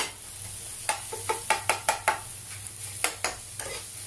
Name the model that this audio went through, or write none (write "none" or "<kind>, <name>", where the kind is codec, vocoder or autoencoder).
none